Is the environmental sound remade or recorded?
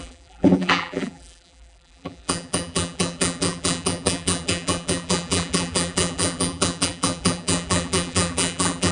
remade